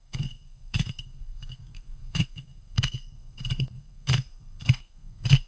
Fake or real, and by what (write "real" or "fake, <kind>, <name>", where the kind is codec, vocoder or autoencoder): fake, codec, SNAC